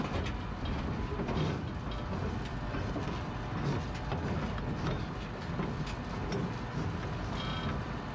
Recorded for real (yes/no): yes